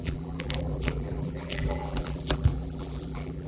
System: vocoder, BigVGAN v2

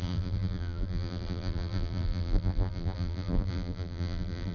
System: vocoder, BigVGAN v2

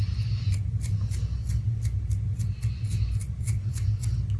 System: none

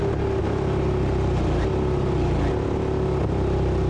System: none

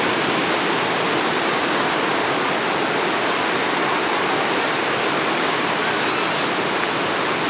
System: none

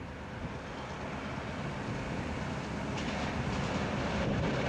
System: none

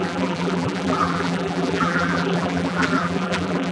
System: vocoder, BigVGAN v2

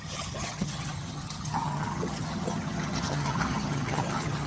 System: vocoder, HiFi-GAN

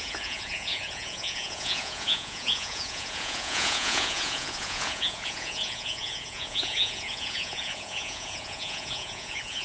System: vocoder, Vocos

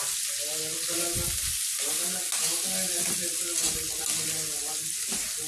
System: none